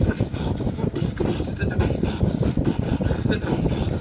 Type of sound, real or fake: real